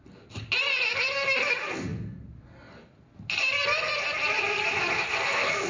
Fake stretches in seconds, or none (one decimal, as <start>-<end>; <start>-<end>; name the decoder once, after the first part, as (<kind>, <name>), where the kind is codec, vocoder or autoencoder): none